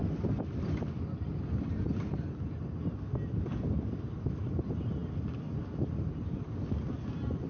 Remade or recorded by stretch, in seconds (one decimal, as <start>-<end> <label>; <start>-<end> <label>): 0.0-7.5 recorded